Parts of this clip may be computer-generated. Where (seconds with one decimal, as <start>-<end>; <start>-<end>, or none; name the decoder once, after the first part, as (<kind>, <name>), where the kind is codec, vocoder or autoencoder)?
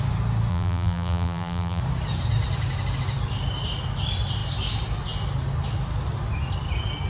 0.5-1.8 (vocoder, BigVGAN v2)